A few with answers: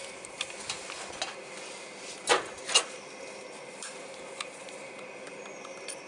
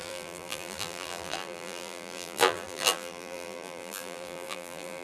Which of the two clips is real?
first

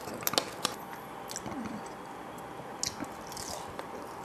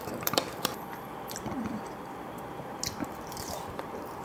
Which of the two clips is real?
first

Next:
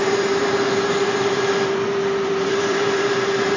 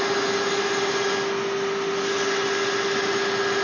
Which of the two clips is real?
second